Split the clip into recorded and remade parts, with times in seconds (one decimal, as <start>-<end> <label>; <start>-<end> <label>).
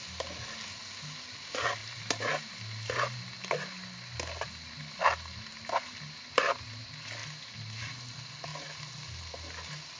0.0-10.0 recorded